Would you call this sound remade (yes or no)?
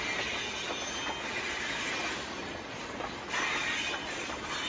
no